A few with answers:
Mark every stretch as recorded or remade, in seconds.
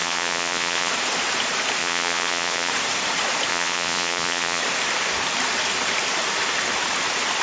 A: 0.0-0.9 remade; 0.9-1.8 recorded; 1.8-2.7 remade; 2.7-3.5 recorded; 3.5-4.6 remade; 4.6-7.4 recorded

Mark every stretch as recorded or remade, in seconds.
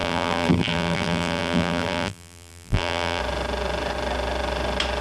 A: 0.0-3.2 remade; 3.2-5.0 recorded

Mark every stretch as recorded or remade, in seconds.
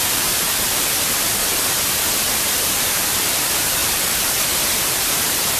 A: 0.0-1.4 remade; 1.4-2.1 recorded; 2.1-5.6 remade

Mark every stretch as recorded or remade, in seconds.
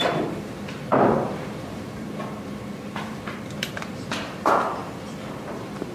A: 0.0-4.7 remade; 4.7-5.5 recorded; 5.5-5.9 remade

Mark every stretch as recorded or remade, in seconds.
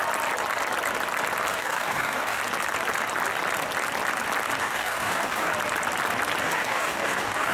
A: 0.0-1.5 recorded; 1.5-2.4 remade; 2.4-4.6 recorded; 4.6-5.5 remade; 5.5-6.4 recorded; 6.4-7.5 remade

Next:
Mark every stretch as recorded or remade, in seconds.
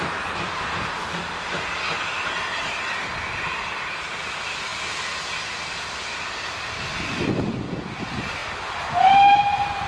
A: 0.0-9.9 recorded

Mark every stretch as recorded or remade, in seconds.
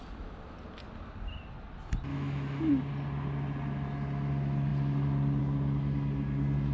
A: 0.0-2.1 recorded; 2.1-2.7 remade; 2.7-6.7 recorded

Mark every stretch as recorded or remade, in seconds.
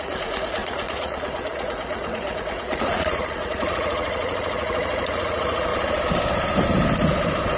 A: 0.0-5.7 remade; 5.7-7.6 recorded